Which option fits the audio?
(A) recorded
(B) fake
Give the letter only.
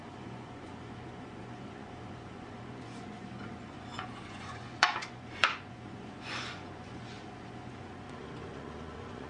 B